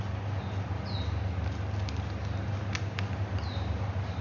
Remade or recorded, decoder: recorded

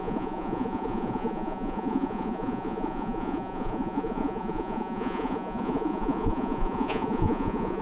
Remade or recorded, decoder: remade, vocoder, Vocos